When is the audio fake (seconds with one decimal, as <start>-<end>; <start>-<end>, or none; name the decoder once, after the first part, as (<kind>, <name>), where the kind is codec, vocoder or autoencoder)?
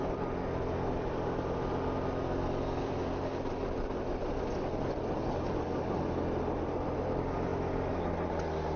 none